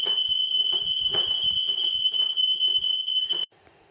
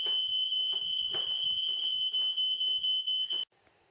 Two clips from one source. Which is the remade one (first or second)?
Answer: first